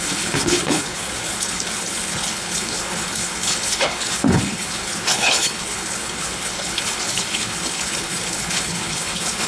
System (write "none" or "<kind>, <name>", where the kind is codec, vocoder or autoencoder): codec, HILCodec